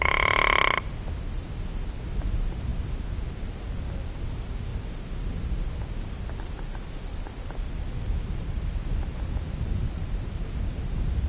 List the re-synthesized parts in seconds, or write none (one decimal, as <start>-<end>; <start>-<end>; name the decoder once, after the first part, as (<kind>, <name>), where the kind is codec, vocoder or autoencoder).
none